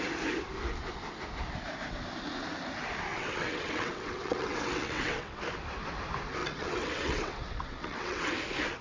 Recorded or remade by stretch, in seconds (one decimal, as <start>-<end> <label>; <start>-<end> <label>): 0.0-3.1 recorded; 3.1-5.4 remade; 5.4-6.4 recorded; 6.4-8.3 remade; 8.3-8.8 recorded